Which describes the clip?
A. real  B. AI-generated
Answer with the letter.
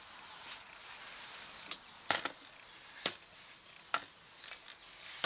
A